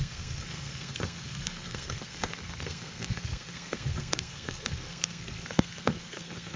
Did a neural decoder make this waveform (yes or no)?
yes